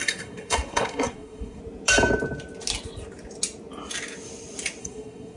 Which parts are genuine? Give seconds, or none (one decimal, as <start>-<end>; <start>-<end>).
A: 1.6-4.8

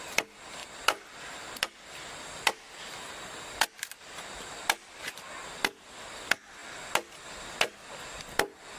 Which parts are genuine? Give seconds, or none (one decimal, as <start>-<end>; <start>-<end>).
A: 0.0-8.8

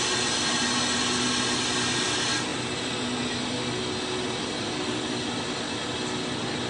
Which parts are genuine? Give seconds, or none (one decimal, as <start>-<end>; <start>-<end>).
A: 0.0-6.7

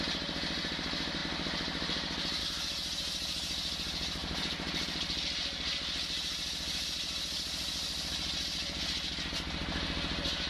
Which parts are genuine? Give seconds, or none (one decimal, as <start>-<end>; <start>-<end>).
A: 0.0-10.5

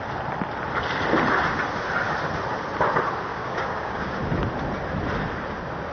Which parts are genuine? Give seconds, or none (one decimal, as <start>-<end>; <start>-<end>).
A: 0.0-3.3; 4.2-5.9

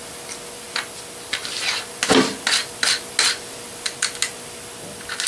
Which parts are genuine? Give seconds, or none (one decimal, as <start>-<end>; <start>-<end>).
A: 0.0-5.3